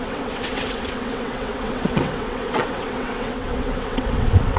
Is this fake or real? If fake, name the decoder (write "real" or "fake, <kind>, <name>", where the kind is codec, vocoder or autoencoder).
fake, vocoder, WaveNeXt